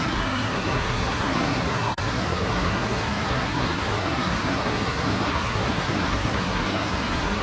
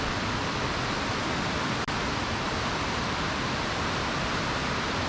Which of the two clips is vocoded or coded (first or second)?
first